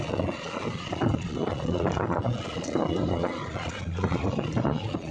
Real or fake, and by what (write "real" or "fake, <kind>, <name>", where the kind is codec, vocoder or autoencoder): fake, vocoder, Vocos